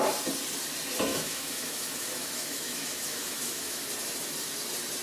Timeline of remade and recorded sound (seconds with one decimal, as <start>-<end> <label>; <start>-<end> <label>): 0.0-1.1 recorded; 1.1-3.9 remade; 3.9-5.0 recorded